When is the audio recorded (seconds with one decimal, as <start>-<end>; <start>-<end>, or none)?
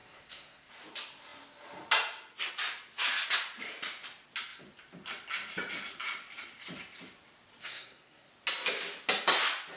0.7-7.6; 8.3-9.8